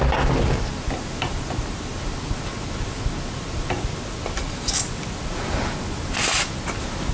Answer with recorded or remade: recorded